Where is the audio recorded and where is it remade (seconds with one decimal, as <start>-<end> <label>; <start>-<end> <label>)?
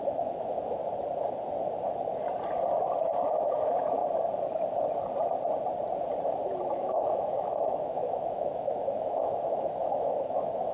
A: 0.0-0.8 remade; 0.8-3.2 recorded; 3.2-4.0 remade; 4.0-6.7 recorded; 6.7-10.7 remade